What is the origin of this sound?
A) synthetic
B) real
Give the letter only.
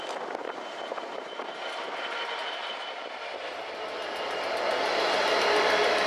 B